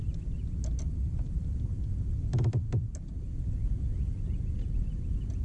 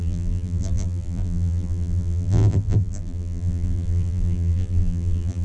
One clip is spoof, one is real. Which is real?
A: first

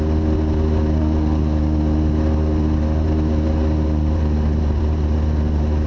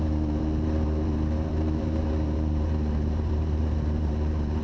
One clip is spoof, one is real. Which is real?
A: first